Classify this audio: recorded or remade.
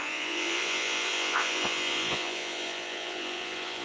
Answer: remade